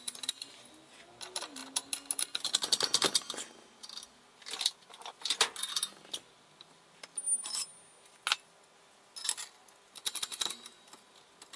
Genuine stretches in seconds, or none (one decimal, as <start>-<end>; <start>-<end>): 0.0-11.6